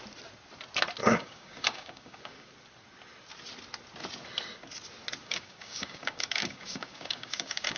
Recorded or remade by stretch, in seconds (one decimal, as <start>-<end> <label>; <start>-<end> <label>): 0.0-1.0 recorded; 1.0-2.5 remade; 2.5-5.2 recorded; 5.2-7.8 remade